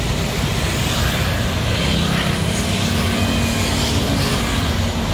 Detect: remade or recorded recorded